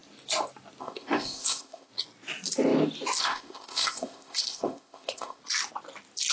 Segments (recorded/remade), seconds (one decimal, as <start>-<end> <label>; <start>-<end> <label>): 0.0-0.8 recorded; 0.8-1.9 remade; 1.9-3.2 recorded; 3.2-5.4 remade; 5.4-6.3 recorded